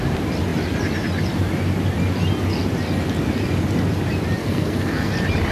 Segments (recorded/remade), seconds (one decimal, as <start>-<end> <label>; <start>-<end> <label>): 0.0-4.4 recorded; 4.4-5.1 remade; 5.1-5.5 recorded